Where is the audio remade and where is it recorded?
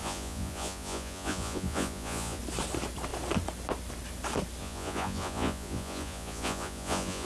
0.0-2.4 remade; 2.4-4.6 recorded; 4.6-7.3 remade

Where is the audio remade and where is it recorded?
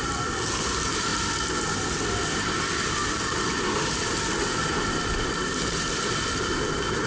0.0-7.1 recorded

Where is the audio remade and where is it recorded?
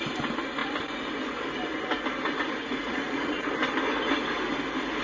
0.0-2.6 recorded; 2.6-3.5 remade; 3.5-5.0 recorded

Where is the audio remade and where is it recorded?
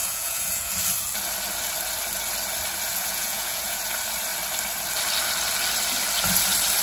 0.0-0.7 remade; 0.7-2.9 recorded; 2.9-3.8 remade; 3.8-6.8 recorded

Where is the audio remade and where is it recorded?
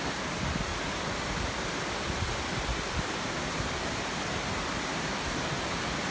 0.0-6.1 recorded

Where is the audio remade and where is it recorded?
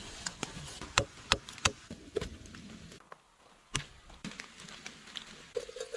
0.0-2.3 remade; 2.3-6.0 recorded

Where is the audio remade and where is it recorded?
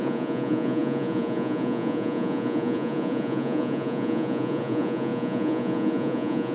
0.0-6.5 remade